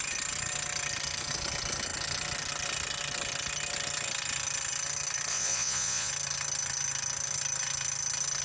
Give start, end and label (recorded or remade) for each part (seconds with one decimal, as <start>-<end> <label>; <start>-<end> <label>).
0.0-5.3 recorded; 5.3-6.1 remade; 6.1-8.4 recorded